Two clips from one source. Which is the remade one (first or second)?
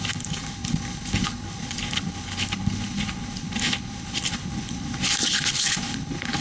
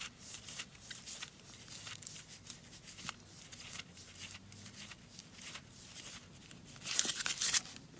first